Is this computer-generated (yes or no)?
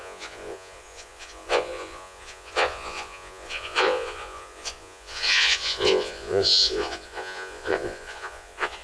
yes